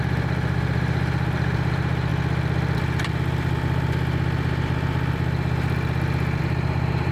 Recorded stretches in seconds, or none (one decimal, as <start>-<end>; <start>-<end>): 2.1-6.4

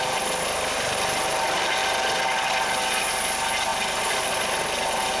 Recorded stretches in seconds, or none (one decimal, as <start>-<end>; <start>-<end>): 0.0-3.7; 4.3-5.2

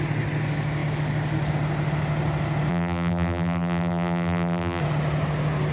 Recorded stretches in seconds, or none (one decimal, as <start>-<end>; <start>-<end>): 0.0-2.7; 4.8-5.7

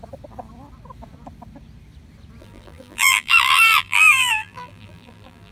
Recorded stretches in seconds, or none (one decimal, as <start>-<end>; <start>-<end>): 0.0-2.4

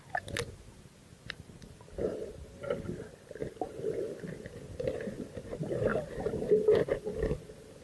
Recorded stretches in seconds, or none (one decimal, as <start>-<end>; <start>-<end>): 0.0-3.4; 4.2-5.9

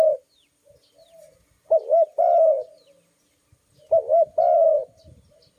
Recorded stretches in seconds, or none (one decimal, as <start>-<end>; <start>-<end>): 0.0-5.6

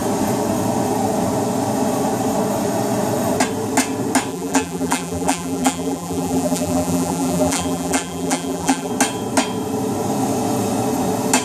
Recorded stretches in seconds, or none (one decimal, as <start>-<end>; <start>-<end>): 0.0-4.3; 8.9-11.4

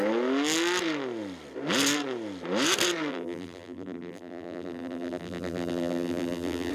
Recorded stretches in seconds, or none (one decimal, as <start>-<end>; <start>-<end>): 0.0-3.1